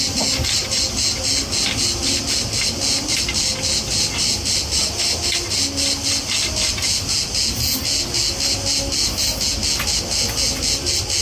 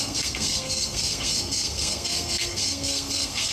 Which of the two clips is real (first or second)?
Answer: first